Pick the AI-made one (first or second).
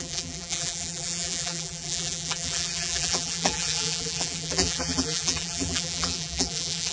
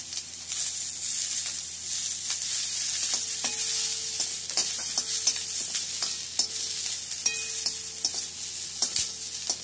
first